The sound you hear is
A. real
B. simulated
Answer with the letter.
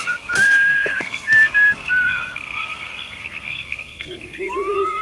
B